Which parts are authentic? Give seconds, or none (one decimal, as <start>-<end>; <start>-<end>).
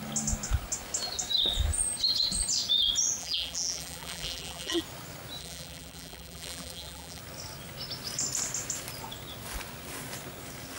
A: 0.0-3.2; 4.8-5.4; 7.2-10.8